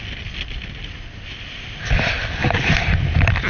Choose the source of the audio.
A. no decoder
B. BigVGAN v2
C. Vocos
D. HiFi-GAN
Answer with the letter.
A